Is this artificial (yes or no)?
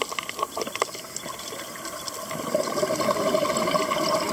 no